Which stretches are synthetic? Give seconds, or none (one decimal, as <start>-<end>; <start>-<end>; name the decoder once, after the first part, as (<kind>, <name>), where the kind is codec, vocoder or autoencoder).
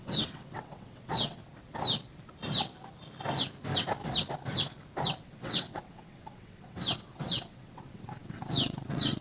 0.0-1.4 (vocoder, WaveNeXt); 5.2-9.2